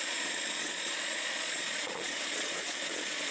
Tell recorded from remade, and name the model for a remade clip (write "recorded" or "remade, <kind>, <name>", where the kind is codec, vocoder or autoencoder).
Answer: remade, vocoder, Vocos